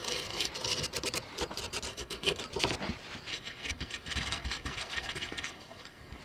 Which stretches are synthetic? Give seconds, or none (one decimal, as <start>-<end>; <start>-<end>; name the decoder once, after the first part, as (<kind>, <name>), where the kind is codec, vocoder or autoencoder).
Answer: 0.0-0.5 (codec, SNAC); 1.9-2.4; 3.3-6.2